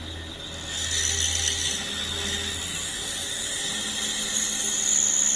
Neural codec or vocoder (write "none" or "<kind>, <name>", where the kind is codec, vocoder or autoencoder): none